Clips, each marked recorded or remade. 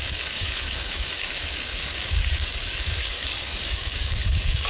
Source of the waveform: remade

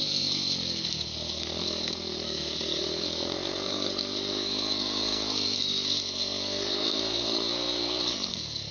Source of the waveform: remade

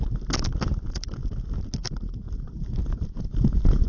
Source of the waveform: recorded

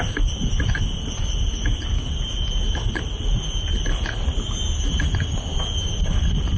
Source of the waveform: recorded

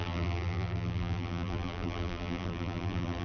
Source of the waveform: remade